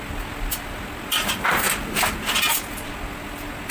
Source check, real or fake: real